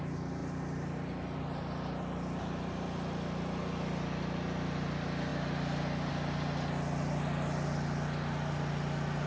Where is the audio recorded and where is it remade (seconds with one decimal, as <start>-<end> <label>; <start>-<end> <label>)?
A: 0.0-9.3 recorded